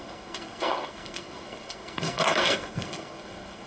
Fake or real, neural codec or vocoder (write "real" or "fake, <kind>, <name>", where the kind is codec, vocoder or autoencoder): fake, codec, SNAC